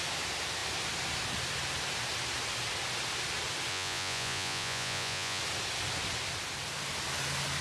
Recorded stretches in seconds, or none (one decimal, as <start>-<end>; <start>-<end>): 0.0-3.7; 5.4-7.6